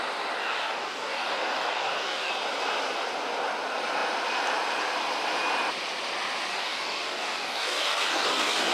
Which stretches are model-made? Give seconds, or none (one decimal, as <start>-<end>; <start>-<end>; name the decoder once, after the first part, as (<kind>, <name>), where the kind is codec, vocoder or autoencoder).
0.4-2.3 (codec, DAC); 6.5-8.7